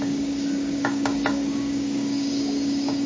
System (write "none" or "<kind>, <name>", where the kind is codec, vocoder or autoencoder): codec, DAC